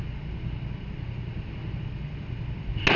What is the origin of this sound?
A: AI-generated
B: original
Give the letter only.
B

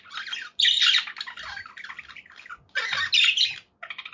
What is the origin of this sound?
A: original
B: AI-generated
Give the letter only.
A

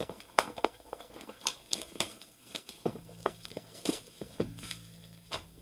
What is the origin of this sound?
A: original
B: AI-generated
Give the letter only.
B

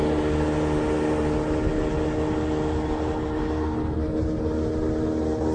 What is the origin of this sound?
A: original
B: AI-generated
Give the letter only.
A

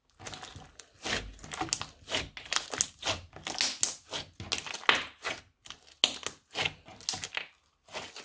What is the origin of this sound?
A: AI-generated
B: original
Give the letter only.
B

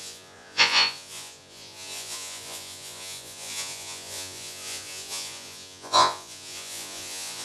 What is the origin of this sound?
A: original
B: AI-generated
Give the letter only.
B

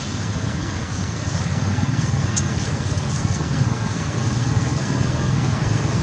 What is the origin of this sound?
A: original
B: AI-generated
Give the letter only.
B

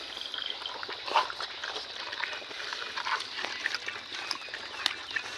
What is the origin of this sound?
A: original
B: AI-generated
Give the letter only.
A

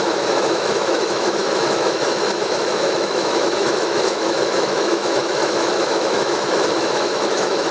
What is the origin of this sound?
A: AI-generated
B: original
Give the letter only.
A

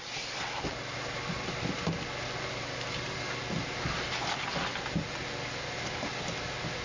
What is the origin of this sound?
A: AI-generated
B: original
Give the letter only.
B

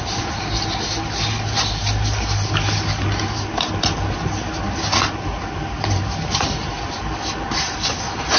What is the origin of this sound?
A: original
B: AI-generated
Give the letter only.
A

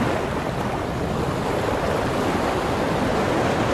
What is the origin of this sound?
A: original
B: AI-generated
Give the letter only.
A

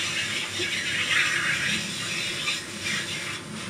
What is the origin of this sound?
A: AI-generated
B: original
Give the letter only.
B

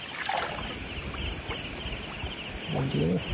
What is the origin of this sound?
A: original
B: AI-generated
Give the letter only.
A